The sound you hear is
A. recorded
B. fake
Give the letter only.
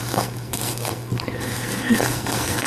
B